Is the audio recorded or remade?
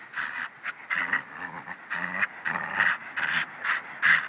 recorded